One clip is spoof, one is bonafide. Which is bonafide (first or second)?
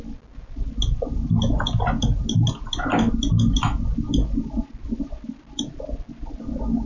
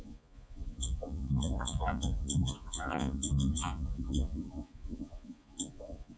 first